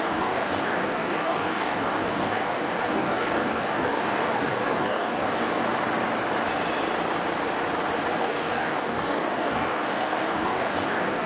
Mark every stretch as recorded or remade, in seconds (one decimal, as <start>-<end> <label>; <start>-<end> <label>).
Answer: 0.0-5.6 remade; 5.6-8.2 recorded; 8.2-11.3 remade

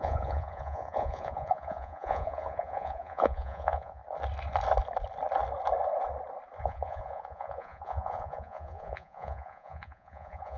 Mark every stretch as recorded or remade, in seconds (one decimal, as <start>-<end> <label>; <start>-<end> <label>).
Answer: 0.0-4.0 remade; 4.0-6.6 recorded; 6.6-10.6 remade

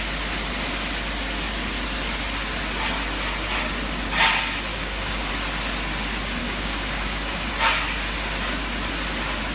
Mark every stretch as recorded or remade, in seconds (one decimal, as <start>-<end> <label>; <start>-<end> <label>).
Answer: 0.0-4.7 recorded; 4.7-5.3 remade; 5.3-6.4 recorded; 6.4-7.5 remade; 7.5-9.5 recorded